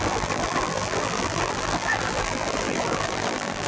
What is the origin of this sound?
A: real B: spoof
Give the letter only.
B